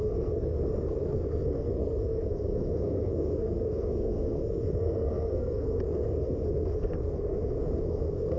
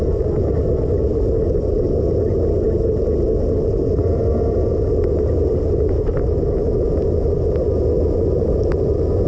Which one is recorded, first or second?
second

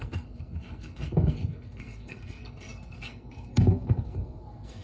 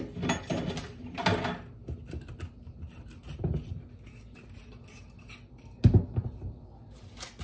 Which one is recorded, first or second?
second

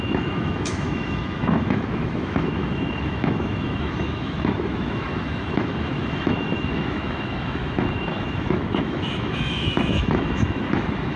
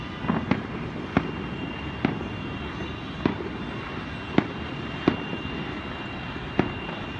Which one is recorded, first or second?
second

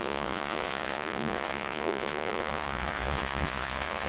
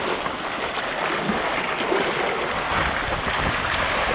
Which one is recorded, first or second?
second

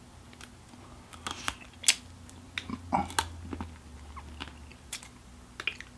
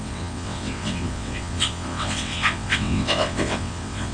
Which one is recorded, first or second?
first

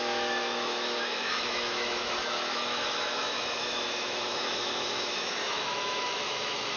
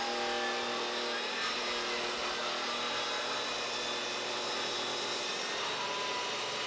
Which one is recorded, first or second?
second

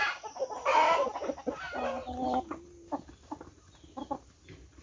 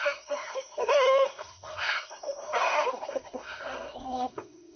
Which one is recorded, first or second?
first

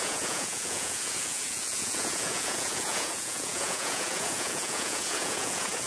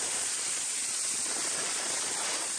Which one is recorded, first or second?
second